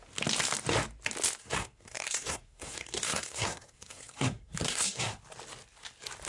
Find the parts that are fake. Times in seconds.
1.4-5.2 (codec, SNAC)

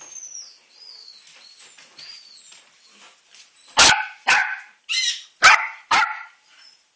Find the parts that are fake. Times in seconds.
none

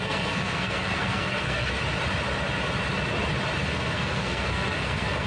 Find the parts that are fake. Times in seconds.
0.0-1.8 (codec, SNAC); 3.6-5.3

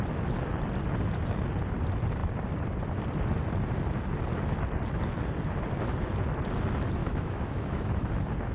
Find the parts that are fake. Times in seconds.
7.0-8.1 (autoencoder, DAC-VAE)

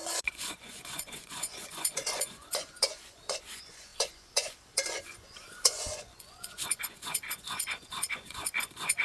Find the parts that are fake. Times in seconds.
0.0-9.0 (vocoder, Vocos)